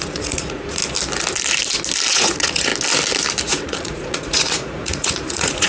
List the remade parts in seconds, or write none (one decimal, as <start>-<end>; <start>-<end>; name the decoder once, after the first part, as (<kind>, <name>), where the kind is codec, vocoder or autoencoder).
0.0-0.8 (vocoder, Vocos); 2.1-2.7; 3.4-5.7